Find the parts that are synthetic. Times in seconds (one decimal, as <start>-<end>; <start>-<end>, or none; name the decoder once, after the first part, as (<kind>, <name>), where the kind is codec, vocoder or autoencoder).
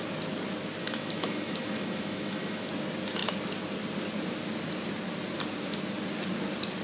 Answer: 0.8-2.7 (autoencoder, DAC-VAE)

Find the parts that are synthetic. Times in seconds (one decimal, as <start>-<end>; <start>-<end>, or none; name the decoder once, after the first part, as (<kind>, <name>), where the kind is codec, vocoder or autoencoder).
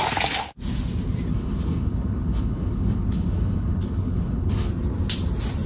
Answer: 1.3-4.7 (codec, HILCodec)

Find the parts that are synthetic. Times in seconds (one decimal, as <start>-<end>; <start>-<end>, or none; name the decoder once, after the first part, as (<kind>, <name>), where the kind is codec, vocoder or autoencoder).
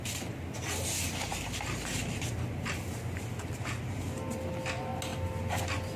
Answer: none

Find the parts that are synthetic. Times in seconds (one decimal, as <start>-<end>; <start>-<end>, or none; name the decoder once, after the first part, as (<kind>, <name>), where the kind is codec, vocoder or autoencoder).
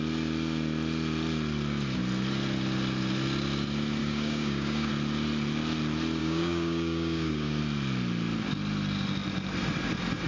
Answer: 4.0-4.9 (codec, DAC); 6.2-7.6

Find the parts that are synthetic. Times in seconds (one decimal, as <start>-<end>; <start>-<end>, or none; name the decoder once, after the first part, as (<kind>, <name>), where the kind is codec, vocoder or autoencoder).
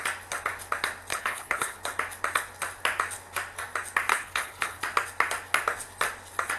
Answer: 1.1-1.8 (codec, HILCodec); 4.1-4.8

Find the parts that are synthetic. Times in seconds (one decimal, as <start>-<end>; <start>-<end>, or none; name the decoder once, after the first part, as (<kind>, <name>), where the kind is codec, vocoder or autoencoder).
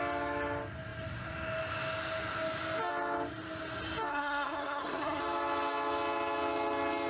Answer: 4.1-5.2 (codec, SNAC)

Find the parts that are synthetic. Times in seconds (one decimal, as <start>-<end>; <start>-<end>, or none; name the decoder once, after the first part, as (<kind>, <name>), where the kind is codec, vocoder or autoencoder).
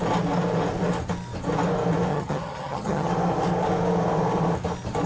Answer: 2.1-3.1 (vocoder, HiFi-GAN)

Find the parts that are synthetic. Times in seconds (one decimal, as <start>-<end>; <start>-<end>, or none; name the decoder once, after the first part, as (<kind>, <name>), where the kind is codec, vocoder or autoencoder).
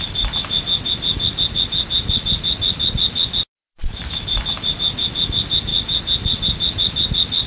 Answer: none